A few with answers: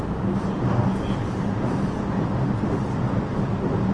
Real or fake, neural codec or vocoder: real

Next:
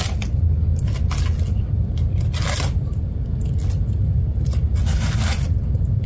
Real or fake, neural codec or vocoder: real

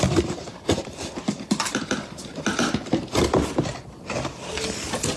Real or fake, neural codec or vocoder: real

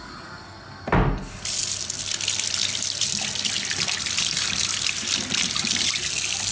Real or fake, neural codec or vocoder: real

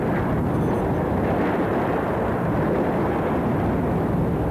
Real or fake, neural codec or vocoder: fake, vocoder, BigVGAN v2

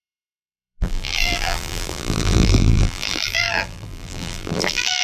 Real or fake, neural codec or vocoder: fake, vocoder, BigVGAN v2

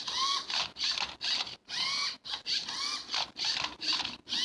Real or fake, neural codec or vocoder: real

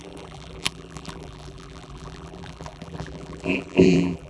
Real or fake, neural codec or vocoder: fake, vocoder, BigVGAN v2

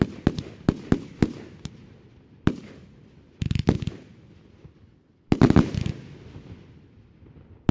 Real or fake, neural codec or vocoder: real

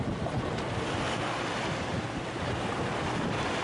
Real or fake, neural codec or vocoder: real